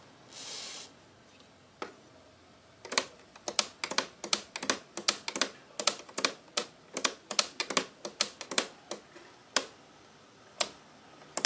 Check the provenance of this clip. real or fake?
real